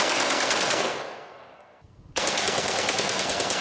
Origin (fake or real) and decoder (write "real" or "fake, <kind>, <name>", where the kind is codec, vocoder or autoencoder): fake, codec, SNAC